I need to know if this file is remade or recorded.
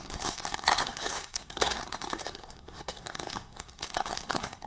remade